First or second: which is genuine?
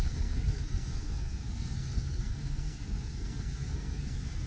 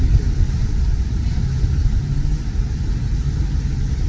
second